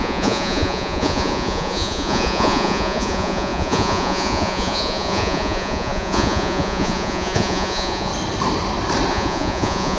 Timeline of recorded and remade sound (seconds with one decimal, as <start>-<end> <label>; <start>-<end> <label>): 0.0-8.1 remade; 8.1-9.1 recorded; 9.1-10.0 remade